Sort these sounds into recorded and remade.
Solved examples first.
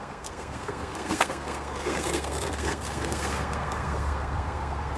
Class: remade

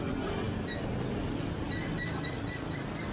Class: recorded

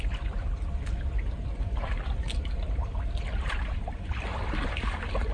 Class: remade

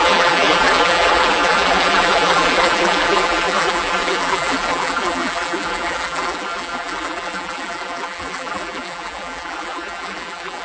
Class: remade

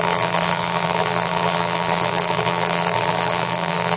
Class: remade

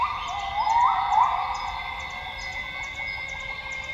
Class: recorded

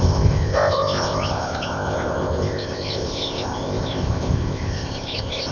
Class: remade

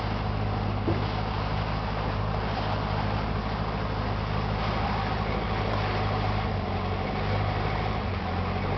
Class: recorded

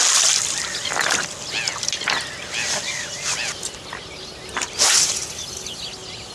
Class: recorded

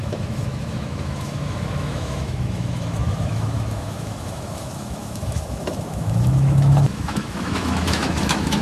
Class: remade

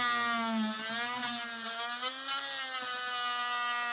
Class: recorded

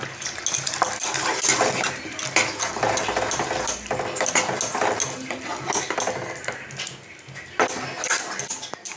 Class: recorded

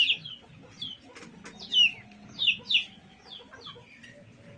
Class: recorded